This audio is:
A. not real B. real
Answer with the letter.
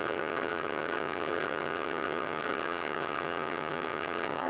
A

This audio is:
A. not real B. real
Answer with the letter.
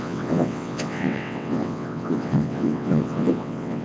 A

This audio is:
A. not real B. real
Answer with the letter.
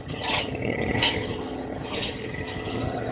A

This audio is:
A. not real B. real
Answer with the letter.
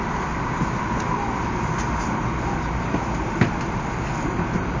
B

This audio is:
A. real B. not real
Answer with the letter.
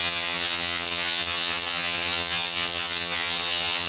B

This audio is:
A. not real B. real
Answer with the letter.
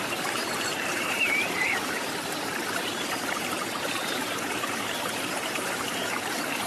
A